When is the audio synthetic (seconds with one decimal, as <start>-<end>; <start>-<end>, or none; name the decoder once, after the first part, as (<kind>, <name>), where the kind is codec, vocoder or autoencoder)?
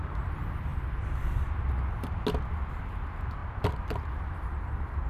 none